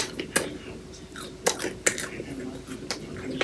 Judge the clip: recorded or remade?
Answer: recorded